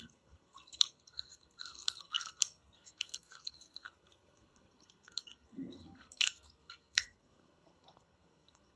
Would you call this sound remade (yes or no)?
yes